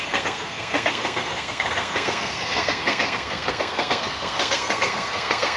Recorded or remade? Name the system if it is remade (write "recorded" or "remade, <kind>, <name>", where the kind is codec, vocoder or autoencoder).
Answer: remade, codec, SNAC